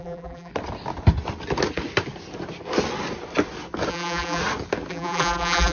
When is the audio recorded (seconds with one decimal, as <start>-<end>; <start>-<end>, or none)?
0.5-3.9; 4.4-4.9